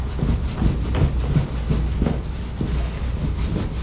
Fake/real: real